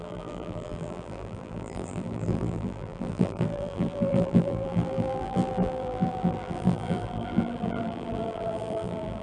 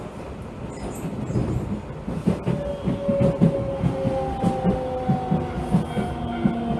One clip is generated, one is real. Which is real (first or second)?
second